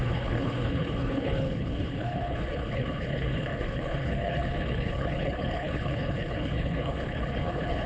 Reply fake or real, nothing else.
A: fake